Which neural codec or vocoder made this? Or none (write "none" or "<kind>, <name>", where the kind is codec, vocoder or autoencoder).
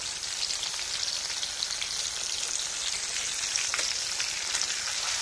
none